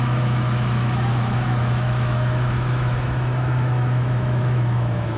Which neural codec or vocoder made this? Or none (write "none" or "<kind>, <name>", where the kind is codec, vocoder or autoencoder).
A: autoencoder, DAC-VAE